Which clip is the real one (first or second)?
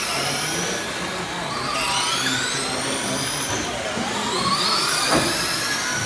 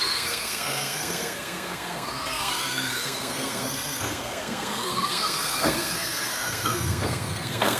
first